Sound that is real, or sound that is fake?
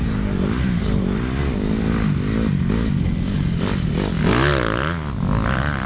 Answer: real